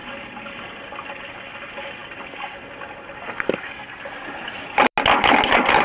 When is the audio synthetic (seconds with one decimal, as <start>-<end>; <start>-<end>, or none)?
none